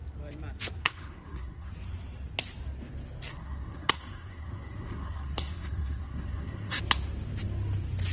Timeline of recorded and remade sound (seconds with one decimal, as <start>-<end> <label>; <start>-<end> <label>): 0.0-0.8 recorded; 0.8-1.7 remade; 1.7-3.3 recorded; 3.3-6.8 remade; 6.8-8.1 recorded